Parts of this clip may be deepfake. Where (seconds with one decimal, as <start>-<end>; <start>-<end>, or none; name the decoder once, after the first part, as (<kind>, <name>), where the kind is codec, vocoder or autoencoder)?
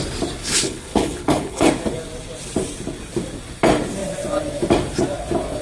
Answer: 0.4-1.7 (codec, HILCodec)